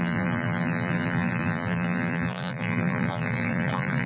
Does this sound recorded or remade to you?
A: remade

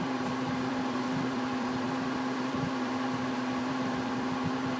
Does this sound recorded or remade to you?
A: remade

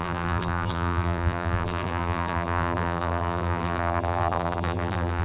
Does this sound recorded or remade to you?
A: remade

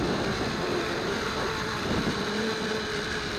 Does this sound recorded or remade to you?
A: remade